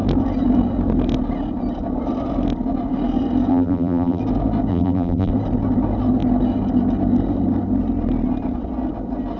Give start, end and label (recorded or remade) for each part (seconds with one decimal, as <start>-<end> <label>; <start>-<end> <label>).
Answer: 0.0-3.5 recorded; 3.5-4.2 remade; 4.2-4.7 recorded; 4.7-5.3 remade; 5.3-9.4 recorded